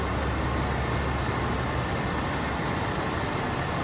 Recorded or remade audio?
recorded